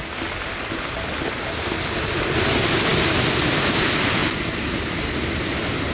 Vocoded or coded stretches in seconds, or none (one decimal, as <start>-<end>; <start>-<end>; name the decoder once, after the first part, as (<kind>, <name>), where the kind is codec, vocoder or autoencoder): none